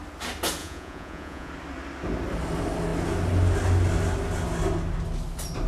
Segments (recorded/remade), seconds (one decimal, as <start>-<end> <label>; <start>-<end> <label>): 0.0-0.6 recorded; 0.6-1.5 remade; 1.5-5.7 recorded